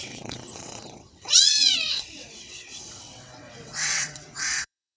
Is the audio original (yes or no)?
no